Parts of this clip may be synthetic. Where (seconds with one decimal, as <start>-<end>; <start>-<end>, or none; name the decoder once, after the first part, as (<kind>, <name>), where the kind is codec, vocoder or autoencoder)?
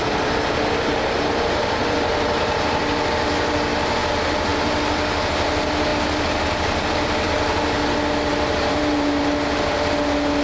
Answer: 1.8-2.8 (vocoder, BigVGAN v2); 8.3-9.2